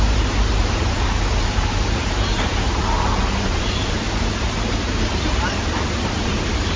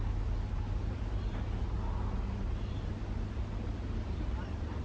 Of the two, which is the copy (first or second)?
first